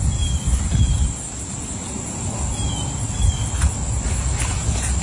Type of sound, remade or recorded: recorded